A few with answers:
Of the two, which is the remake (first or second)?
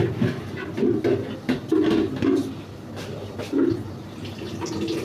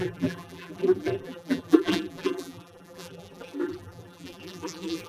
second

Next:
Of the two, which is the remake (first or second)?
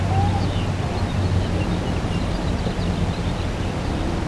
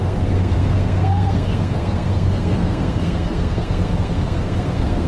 second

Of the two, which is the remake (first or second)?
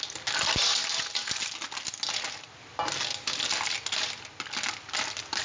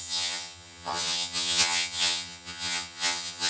second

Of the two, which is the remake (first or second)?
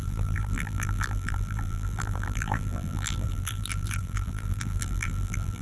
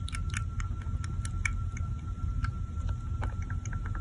first